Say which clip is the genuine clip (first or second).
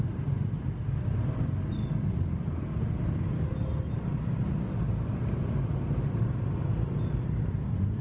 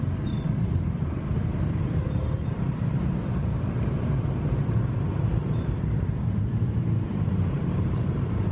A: first